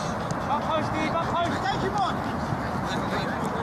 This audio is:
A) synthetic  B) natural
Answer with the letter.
B